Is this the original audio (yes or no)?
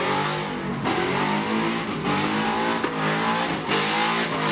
yes